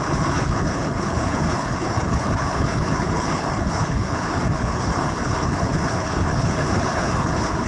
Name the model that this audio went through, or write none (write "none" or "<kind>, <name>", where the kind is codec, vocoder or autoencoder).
codec, HILCodec